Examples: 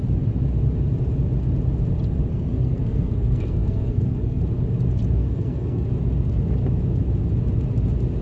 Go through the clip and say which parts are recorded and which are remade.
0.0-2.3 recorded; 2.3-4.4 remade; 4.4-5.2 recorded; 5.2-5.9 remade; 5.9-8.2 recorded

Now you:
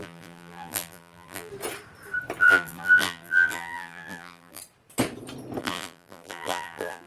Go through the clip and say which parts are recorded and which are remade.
0.0-1.5 remade; 1.5-2.4 recorded; 2.4-4.6 remade; 4.6-5.6 recorded; 5.6-7.1 remade